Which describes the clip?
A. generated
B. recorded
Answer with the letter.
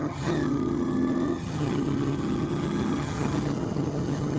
A